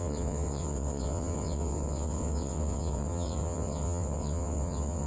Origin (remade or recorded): remade